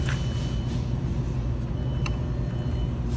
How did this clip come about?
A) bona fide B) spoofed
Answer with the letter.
A